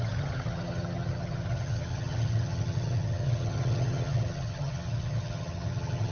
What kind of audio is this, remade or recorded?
remade